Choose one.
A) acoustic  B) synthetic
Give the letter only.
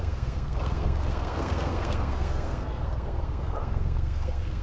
B